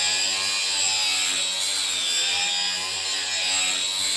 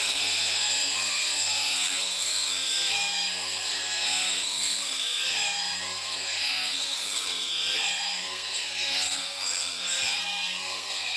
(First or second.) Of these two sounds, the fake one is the second